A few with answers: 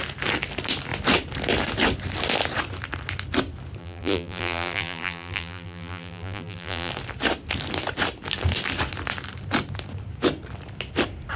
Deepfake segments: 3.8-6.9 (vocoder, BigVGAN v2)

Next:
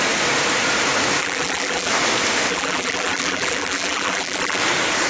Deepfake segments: 1.2-1.9 (vocoder, BigVGAN v2); 2.5-4.6

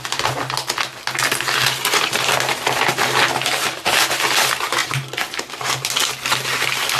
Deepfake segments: 4.8-5.9 (vocoder, BigVGAN v2)